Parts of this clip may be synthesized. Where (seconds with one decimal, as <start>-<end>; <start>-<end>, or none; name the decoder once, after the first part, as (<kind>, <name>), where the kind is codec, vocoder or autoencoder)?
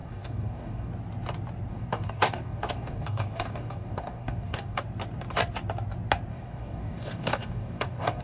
0.0-0.9 (codec, DAC); 1.7-4.8; 6.3-8.2